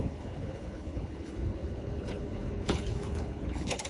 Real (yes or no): no